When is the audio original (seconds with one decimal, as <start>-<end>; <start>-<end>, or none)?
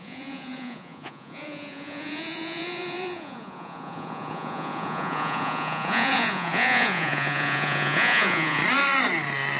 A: 8.6-9.6